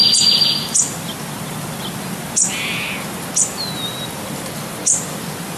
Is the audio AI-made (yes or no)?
no